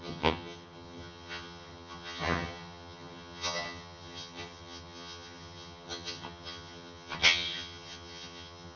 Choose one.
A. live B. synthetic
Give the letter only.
B